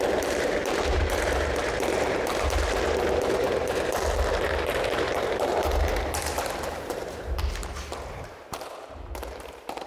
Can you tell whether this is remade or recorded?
remade